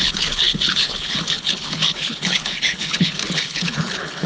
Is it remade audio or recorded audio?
remade